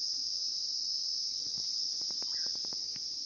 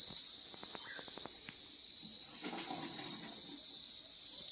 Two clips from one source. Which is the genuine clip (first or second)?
second